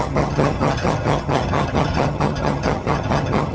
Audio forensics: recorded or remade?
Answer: remade